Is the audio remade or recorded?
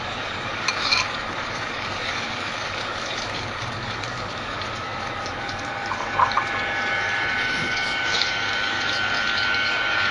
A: remade